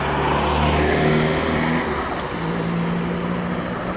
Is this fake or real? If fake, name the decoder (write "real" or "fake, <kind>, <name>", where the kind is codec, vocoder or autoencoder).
real